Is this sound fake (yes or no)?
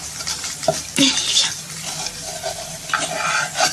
no